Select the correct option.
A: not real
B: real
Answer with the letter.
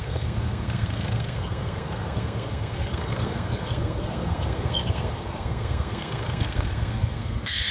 A